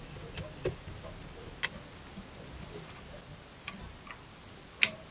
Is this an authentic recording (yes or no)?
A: yes